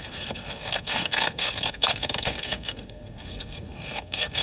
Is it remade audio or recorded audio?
remade